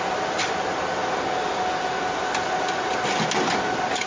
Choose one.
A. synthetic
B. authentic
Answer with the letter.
B